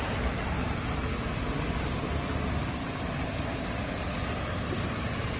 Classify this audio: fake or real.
real